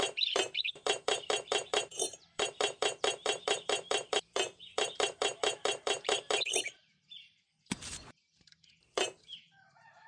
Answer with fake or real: fake